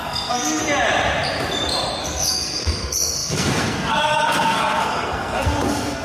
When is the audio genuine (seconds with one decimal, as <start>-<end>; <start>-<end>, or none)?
0.6-2.0